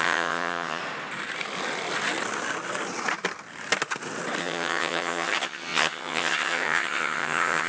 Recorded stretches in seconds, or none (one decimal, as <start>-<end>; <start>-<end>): 0.8-4.4